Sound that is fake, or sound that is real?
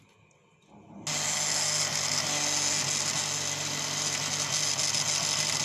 real